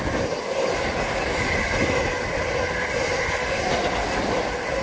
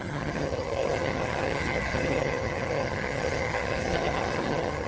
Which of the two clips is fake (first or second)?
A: second